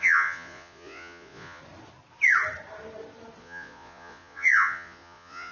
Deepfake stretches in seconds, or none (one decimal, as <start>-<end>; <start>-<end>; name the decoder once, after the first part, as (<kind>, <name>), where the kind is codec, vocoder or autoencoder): 0.0-1.6 (vocoder, Vocos); 3.4-5.5